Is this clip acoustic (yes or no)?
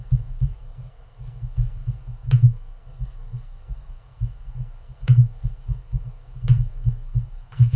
no